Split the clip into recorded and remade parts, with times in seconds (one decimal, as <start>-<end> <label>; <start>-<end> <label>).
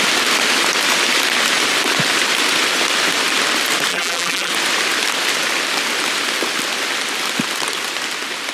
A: 0.0-3.9 recorded; 3.9-4.5 remade; 4.5-8.5 recorded